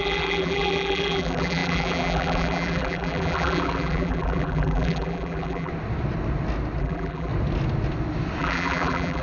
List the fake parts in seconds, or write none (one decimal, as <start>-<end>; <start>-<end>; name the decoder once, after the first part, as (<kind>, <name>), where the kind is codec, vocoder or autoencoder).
0.0-5.7 (vocoder, BigVGAN v2); 6.8-7.3; 8.4-9.2